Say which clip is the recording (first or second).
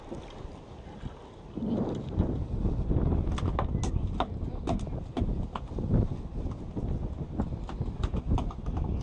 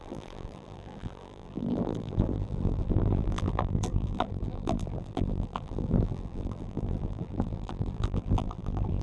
first